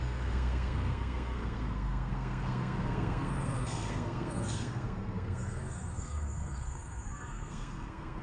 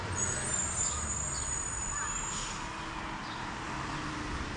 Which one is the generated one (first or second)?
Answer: first